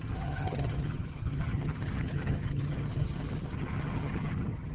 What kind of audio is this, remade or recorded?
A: remade